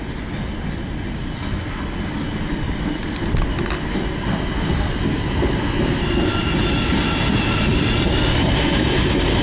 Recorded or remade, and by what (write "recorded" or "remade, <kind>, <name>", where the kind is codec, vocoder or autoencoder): recorded